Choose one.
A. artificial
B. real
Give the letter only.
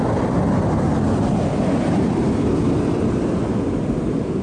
B